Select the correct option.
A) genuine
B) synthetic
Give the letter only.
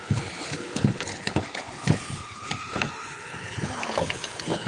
B